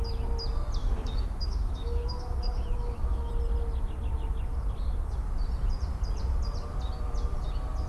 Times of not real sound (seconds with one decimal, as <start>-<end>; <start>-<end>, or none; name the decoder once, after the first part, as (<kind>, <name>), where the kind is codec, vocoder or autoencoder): 0.8-3.3 (autoencoder, DAC-VAE)